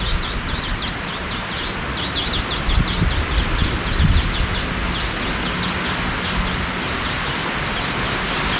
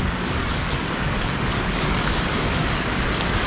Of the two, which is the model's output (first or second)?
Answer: second